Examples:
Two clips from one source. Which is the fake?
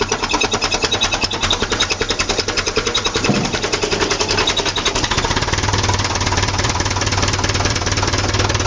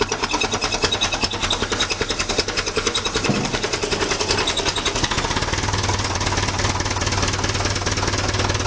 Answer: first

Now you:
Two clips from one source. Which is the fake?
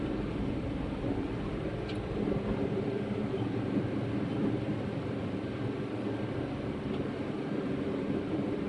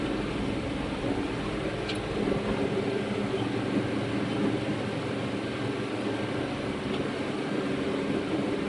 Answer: first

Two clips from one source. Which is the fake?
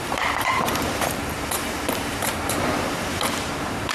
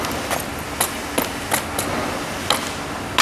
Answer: first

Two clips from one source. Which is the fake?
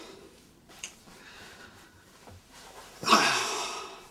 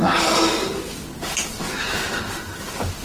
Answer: first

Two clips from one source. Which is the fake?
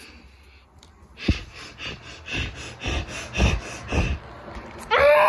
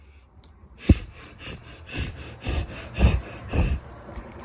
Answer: second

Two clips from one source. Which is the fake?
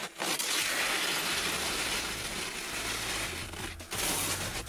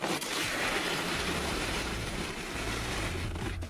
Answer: second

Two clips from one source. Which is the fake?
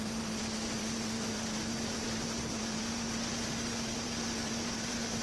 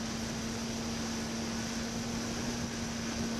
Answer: first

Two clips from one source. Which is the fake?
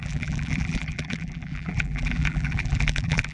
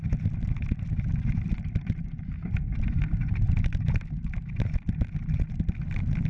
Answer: first